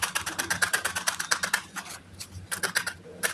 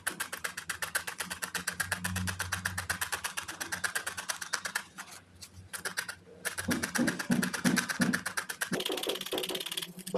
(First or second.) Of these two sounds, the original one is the second